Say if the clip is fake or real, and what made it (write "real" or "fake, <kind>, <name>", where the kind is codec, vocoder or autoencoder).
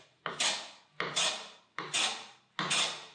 real